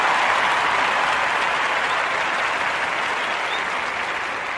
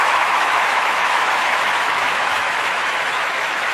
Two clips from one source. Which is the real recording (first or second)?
first